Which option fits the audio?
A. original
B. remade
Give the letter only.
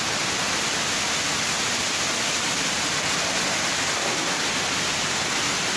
A